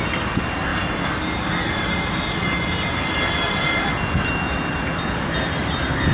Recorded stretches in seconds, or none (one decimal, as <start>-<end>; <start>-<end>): 0.0-6.1

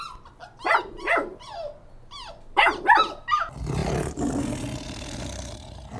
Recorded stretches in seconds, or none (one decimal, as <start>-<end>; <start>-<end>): 0.0-6.0

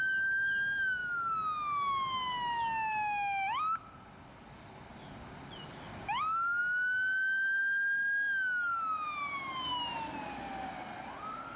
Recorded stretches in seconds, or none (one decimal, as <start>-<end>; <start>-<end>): 0.0-11.6

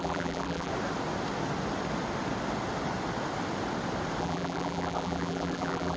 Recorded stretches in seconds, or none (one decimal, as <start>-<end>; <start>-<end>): 0.7-4.2

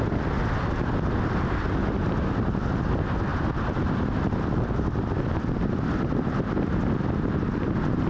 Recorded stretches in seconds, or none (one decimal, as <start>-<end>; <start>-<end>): 0.0-8.1

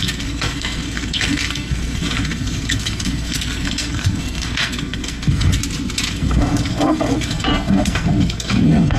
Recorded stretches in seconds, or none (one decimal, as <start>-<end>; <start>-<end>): 5.6-6.1

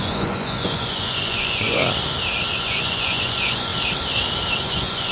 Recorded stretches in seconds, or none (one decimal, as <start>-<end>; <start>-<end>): 1.8-2.6; 3.7-4.6

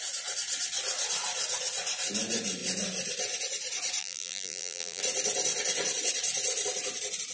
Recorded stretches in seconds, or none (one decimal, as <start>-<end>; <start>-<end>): 0.0-4.0; 5.0-7.3